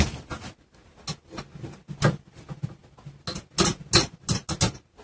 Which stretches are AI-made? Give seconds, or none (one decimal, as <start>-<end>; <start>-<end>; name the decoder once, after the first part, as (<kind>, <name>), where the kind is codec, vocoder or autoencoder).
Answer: none